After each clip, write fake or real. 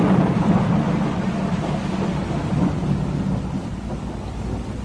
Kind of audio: real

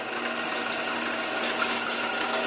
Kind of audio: real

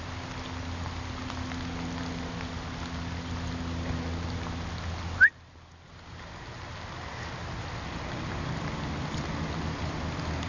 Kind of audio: real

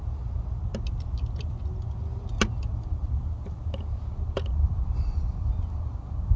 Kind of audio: real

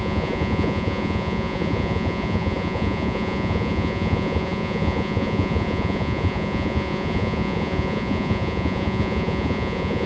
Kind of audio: fake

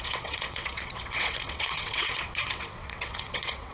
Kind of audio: fake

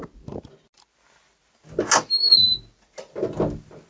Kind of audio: real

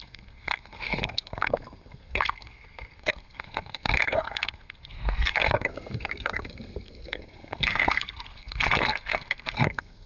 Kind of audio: fake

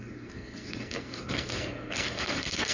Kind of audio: fake